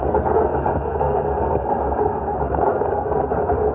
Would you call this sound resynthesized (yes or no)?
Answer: yes